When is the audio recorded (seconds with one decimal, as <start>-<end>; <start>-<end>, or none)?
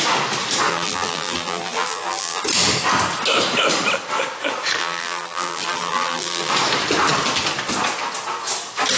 0.0-0.7; 2.4-4.8; 6.5-9.0